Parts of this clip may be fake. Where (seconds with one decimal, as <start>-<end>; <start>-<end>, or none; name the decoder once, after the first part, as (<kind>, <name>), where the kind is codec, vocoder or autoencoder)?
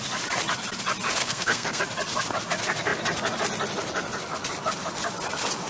1.2-1.8 (codec, SNAC)